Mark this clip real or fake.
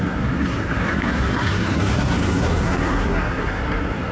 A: fake